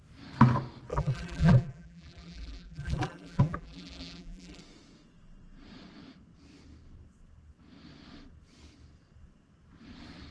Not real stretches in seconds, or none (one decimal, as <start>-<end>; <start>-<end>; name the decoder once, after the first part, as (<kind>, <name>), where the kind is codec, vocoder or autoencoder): 0.9-4.6 (vocoder, BigVGAN v2)